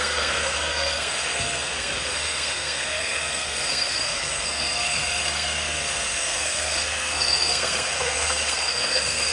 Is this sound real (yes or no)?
no